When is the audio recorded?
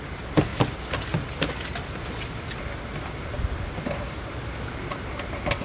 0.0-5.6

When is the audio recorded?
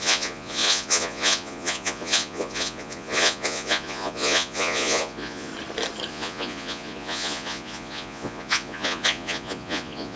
5.5-6.1